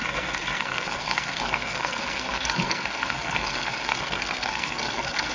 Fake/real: fake